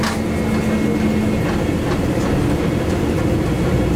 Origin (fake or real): real